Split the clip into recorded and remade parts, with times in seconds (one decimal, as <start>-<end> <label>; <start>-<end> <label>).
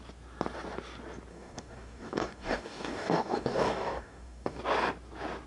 0.0-1.3 recorded; 1.3-4.6 remade; 4.6-5.5 recorded